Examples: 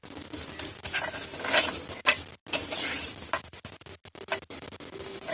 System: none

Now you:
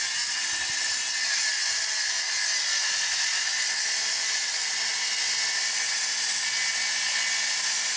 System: none